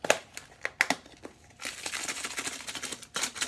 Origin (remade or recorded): recorded